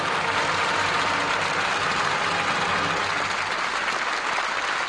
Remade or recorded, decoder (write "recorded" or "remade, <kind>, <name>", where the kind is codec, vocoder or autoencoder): recorded